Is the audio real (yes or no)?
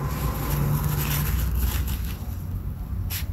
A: yes